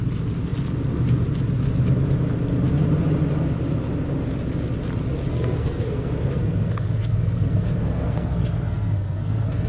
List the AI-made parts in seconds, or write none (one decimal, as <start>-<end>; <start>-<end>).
5.3-9.7

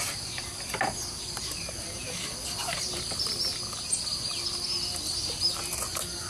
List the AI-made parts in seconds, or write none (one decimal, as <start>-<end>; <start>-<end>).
2.6-3.1

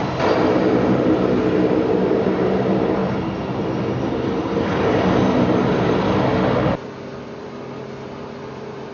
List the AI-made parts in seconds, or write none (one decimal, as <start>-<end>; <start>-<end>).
none

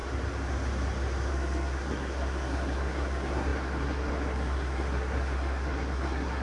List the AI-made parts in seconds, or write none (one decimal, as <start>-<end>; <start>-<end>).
1.3-6.4

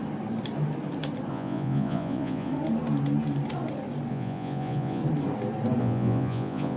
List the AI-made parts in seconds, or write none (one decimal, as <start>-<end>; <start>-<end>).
1.3-2.5; 4.1-5.0; 5.8-6.8

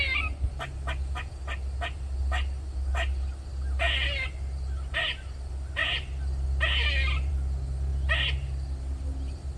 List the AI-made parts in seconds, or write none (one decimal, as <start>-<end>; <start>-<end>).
none

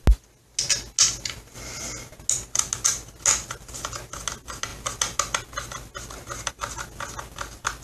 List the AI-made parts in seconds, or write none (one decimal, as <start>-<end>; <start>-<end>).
none